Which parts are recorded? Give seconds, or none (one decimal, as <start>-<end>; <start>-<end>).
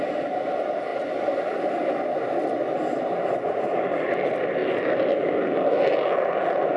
0.0-6.8